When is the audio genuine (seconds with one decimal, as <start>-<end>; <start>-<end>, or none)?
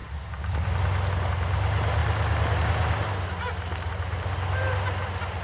0.0-5.4